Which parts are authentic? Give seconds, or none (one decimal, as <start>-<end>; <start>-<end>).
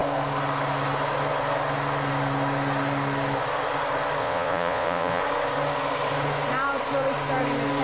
0.0-4.2; 5.2-7.8